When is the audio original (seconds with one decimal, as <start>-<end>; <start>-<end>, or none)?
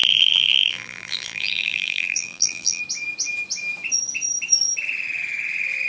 2.8-5.9